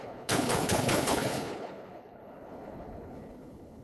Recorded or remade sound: remade